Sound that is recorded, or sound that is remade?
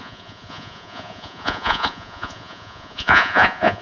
remade